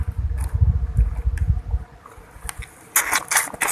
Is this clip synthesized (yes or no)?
no